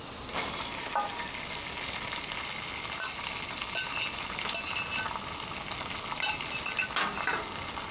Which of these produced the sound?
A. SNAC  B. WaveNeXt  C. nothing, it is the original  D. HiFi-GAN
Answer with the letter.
C